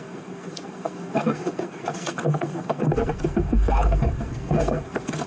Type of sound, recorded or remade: remade